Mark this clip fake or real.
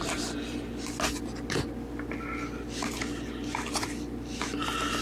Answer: real